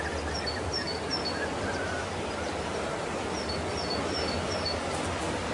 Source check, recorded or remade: recorded